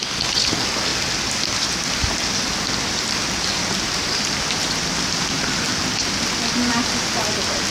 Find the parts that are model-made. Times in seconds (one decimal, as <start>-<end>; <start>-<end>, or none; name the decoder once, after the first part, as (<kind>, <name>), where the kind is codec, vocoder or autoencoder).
none